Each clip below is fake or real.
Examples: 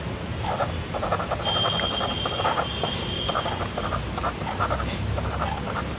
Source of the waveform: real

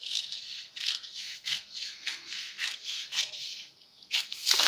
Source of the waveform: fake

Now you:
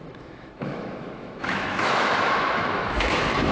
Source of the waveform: fake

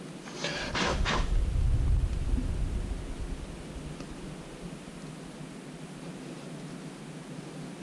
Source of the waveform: real